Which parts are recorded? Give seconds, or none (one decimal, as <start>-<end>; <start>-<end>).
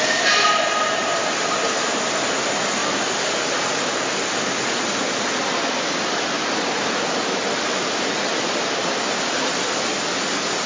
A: 0.0-10.7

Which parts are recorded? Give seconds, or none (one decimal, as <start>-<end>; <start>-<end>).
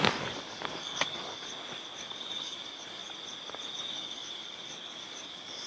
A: 1.5-2.0; 3.0-3.9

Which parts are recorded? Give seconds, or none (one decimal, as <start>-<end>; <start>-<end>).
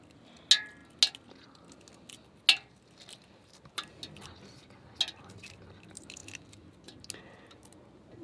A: 0.0-8.2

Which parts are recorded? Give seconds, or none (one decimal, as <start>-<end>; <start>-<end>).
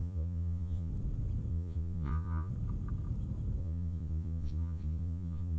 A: 0.9-1.5; 2.5-3.6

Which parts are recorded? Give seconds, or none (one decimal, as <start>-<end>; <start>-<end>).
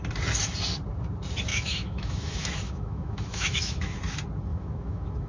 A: 0.0-1.5; 4.0-4.5